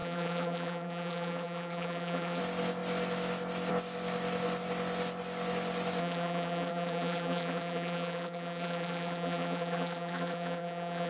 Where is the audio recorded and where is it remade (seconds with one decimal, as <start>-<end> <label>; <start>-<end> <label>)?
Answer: 0.0-2.4 remade; 2.4-6.0 recorded; 6.0-11.1 remade

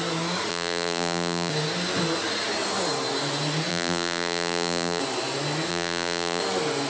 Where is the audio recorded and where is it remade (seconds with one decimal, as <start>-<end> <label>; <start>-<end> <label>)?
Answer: 0.0-0.5 recorded; 0.5-1.5 remade; 1.5-3.7 recorded; 3.7-5.0 remade; 5.0-5.7 recorded; 5.7-6.4 remade; 6.4-6.9 recorded

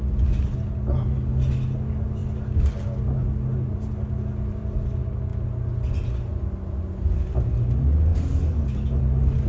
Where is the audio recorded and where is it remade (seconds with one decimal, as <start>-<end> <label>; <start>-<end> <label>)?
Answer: 0.0-9.5 recorded